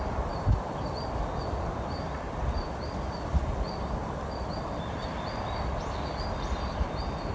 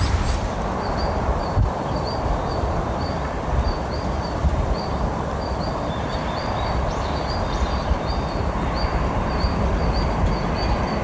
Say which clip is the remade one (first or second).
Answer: second